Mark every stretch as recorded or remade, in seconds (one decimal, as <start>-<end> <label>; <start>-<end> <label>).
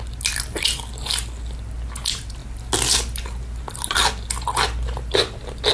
0.0-5.7 recorded